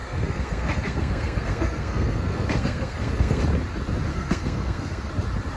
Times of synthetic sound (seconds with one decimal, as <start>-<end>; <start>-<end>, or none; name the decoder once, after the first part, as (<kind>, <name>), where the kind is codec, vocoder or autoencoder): 0.0-3.4 (codec, SNAC); 4.1-5.1